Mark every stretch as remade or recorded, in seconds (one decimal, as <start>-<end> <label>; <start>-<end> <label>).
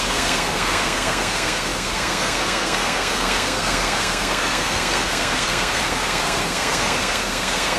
0.0-7.8 remade